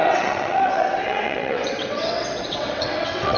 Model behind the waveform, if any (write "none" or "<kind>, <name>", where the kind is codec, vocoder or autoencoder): vocoder, WaveNeXt